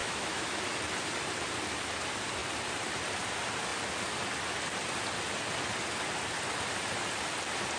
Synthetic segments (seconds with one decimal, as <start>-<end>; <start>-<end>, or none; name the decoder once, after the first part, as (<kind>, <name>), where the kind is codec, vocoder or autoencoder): 0.0-0.6 (autoencoder, DAC-VAE)